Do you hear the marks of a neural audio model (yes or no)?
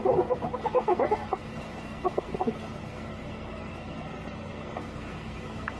yes